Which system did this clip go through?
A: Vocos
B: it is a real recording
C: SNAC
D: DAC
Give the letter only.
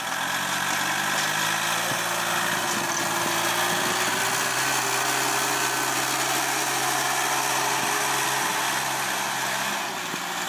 B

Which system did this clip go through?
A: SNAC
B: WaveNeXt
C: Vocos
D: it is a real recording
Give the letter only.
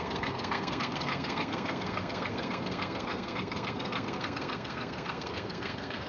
A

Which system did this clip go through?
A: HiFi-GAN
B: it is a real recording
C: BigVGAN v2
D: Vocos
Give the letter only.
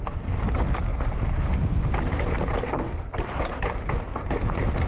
B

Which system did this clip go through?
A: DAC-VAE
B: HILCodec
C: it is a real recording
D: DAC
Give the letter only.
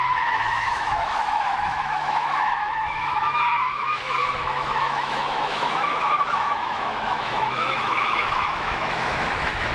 A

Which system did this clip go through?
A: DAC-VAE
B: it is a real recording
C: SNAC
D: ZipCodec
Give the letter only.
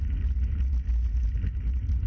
B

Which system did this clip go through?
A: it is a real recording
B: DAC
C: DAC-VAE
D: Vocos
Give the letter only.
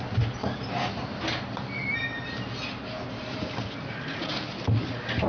A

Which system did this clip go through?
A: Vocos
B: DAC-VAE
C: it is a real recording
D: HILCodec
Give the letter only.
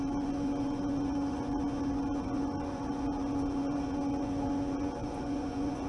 A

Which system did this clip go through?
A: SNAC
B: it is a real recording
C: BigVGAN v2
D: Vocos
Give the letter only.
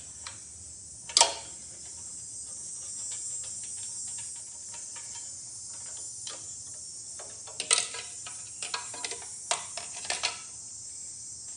B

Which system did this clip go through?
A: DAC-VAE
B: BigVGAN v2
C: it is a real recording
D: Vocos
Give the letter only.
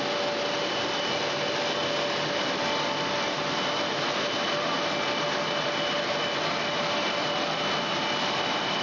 C